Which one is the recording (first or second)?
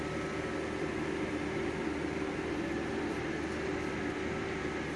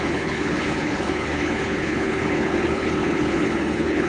first